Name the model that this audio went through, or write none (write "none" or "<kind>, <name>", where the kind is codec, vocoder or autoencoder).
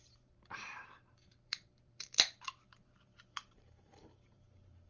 vocoder, BigVGAN v2